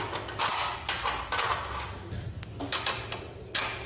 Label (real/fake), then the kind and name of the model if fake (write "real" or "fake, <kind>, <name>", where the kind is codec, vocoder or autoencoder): real